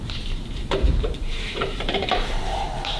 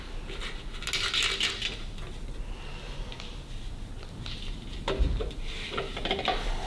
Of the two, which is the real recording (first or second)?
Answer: second